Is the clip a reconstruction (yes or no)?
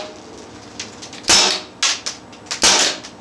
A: no